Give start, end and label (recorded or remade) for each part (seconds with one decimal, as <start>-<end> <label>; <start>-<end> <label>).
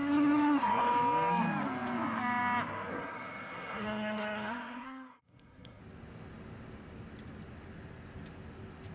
0.0-0.8 remade; 0.8-2.9 recorded; 2.9-5.8 remade; 5.8-8.9 recorded